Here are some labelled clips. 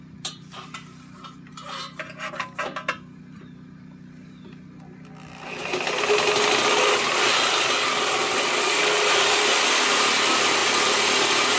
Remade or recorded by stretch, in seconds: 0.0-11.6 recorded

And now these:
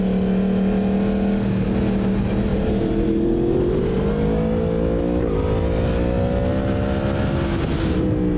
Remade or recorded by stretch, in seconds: 0.0-2.5 recorded; 2.5-4.1 remade; 4.1-8.4 recorded

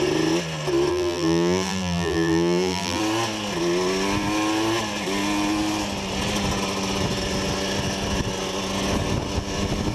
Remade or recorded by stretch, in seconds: 0.0-0.9 recorded; 0.9-3.0 remade; 3.0-9.9 recorded

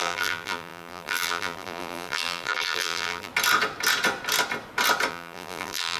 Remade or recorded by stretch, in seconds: 0.0-3.3 remade; 3.3-5.1 recorded; 5.1-6.0 remade

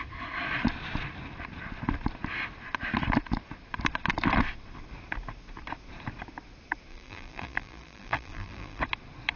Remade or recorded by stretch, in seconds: 0.0-6.9 recorded; 6.9-8.8 remade; 8.8-9.4 recorded